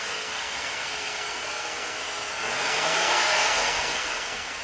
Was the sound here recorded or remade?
remade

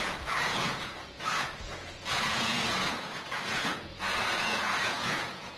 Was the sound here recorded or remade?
remade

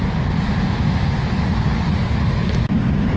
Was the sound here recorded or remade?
recorded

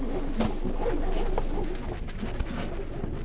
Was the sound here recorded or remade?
recorded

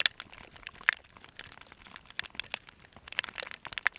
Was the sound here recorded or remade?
recorded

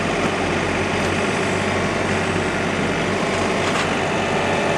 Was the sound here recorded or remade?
recorded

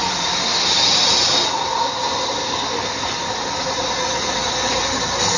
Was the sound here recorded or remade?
recorded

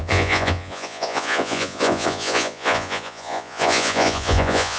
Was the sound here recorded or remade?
remade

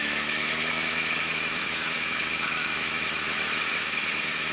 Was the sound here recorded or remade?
remade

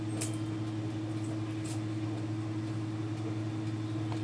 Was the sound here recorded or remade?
recorded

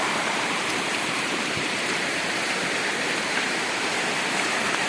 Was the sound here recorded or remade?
remade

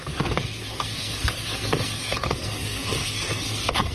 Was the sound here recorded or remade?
remade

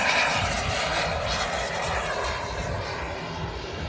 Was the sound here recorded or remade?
recorded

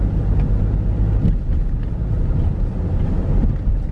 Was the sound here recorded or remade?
recorded